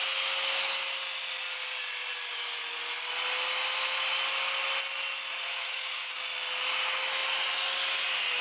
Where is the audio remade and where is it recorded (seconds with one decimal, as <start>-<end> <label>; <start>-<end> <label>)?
0.0-5.5 recorded; 5.5-6.1 remade; 6.1-8.4 recorded

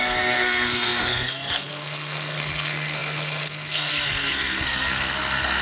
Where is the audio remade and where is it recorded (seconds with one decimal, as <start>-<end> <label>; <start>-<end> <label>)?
0.0-5.6 remade

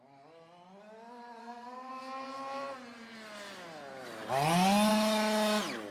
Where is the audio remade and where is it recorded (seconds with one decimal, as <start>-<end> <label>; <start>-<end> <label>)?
0.0-1.4 recorded; 1.4-1.9 remade; 1.9-5.9 recorded

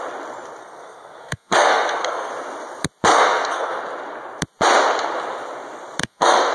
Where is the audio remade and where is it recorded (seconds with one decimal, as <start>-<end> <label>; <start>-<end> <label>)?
0.0-0.6 recorded; 0.6-2.3 remade; 2.3-3.1 recorded; 3.1-3.7 remade; 3.7-6.0 recorded; 6.0-6.5 remade

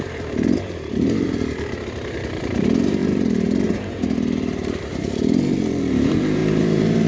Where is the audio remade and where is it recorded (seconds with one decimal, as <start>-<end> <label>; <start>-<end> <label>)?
0.0-7.1 remade

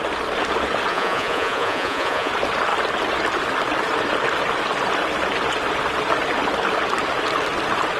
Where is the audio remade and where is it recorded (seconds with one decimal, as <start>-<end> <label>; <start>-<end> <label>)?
0.0-0.9 recorded; 0.9-2.3 remade; 2.3-8.0 recorded

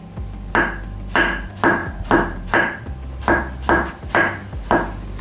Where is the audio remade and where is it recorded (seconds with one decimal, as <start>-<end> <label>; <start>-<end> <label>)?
0.0-5.2 recorded